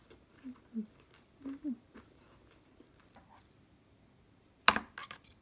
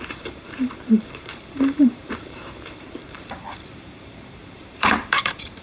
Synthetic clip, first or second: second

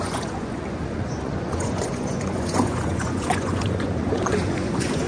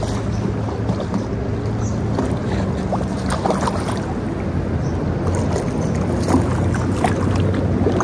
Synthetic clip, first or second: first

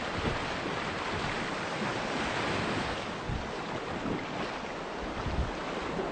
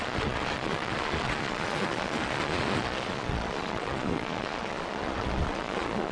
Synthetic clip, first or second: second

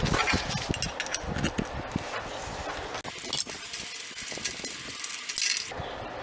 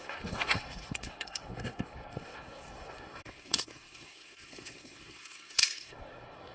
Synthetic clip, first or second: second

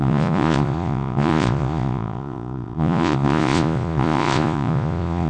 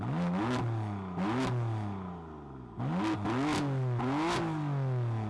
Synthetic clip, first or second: first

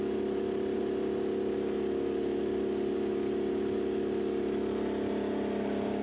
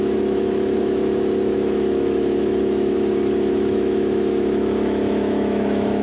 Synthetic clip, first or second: second